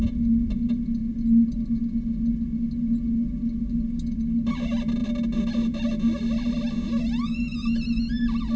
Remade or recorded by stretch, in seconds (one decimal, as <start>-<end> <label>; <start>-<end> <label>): 0.0-8.6 recorded